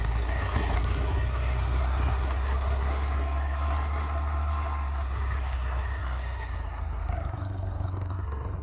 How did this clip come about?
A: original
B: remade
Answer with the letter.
B